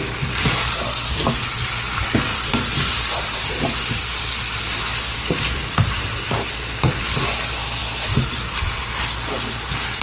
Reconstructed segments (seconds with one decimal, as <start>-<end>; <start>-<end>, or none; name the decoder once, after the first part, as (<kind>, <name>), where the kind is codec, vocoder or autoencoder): 2.3-6.5 (vocoder, BigVGAN v2); 7.8-8.7